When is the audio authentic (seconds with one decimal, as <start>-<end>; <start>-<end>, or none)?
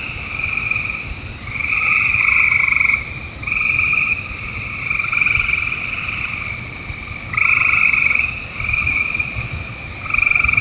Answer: 1.9-3.1